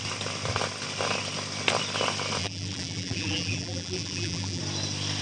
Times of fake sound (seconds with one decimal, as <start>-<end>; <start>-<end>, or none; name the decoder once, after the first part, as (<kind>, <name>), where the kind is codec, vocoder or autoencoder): 2.4-4.6 (vocoder, BigVGAN v2)